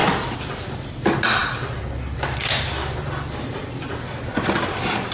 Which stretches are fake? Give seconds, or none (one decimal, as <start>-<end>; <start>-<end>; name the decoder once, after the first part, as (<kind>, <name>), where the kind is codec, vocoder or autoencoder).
none